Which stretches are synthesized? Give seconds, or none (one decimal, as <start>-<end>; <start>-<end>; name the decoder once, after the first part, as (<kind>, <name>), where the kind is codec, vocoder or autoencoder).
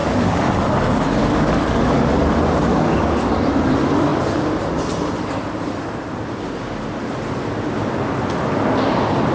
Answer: 0.0-0.5 (codec, DAC); 1.2-1.8; 2.7-3.3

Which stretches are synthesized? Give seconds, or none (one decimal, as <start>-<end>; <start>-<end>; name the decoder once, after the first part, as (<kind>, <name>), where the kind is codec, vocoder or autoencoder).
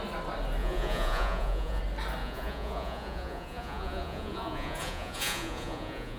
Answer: 0.6-1.8 (vocoder, Vocos); 2.2-6.2